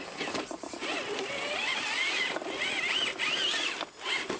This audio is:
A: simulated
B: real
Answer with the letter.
B